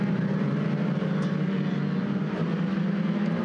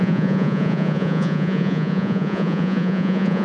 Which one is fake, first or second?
second